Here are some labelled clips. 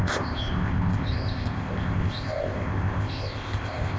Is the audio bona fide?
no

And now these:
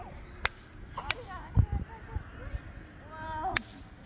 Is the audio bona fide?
yes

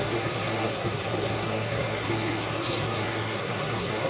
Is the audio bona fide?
no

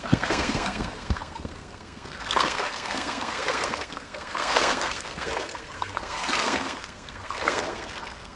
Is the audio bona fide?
no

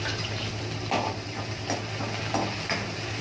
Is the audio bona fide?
yes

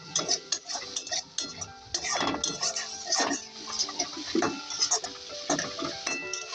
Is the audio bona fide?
yes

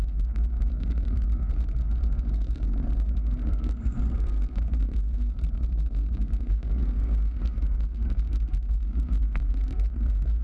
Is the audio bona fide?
no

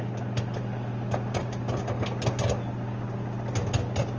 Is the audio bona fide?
yes